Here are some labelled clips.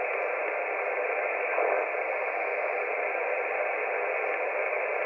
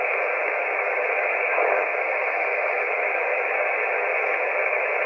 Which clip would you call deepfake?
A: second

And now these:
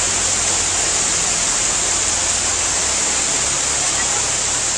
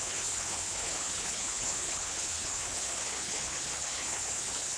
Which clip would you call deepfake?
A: second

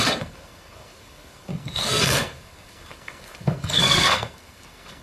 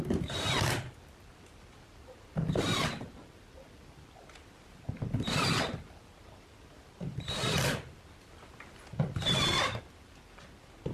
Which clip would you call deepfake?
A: first